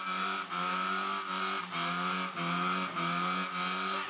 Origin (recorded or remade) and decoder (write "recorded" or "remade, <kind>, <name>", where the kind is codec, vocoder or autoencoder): recorded